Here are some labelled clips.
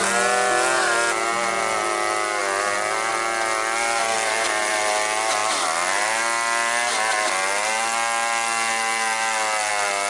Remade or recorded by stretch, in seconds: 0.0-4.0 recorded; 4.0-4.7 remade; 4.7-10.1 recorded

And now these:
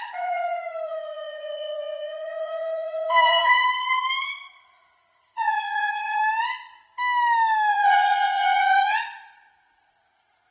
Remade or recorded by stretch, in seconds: 0.0-6.2 remade; 6.2-7.7 recorded; 7.7-10.5 remade

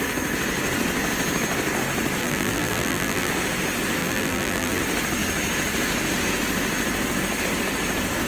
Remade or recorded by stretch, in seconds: 0.0-2.2 recorded; 2.2-3.3 remade; 3.3-4.0 recorded; 4.0-4.8 remade; 4.8-8.3 recorded

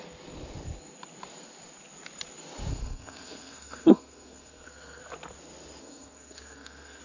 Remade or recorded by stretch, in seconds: 0.0-2.7 recorded; 2.7-5.0 remade; 5.0-5.8 recorded; 5.8-7.0 remade

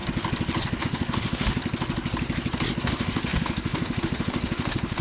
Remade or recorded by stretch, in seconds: 0.0-0.8 recorded; 0.8-1.6 remade; 1.6-2.8 recorded; 2.8-5.0 remade

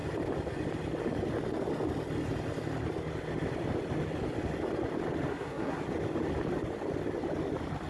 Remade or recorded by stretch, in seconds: 0.0-5.3 recorded; 5.3-5.8 remade; 5.8-7.9 recorded

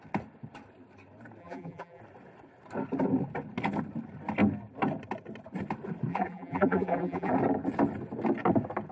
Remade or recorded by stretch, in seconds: 0.0-1.4 recorded; 1.4-2.0 remade; 2.0-6.1 recorded; 6.1-7.3 remade; 7.3-8.9 recorded

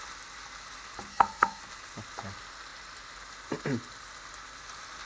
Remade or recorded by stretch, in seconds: 0.0-1.1 recorded; 1.1-1.6 remade; 1.6-5.1 recorded